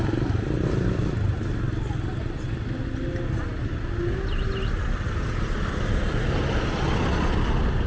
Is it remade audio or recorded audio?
recorded